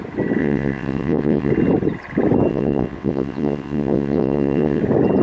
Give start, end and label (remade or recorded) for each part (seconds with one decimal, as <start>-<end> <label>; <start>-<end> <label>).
0.0-0.4 recorded; 0.4-1.5 remade; 1.5-2.5 recorded; 2.5-4.8 remade; 4.8-5.2 recorded